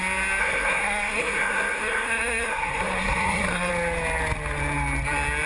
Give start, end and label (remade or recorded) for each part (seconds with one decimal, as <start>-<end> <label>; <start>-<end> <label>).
0.0-0.4 recorded; 0.4-3.7 remade; 3.7-5.5 recorded